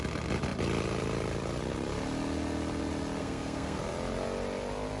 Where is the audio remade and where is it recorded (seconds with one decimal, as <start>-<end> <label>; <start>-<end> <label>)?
0.0-3.2 recorded; 3.2-3.8 remade; 3.8-5.0 recorded